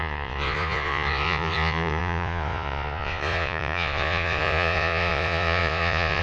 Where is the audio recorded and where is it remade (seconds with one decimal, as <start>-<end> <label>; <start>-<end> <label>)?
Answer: 0.0-6.2 remade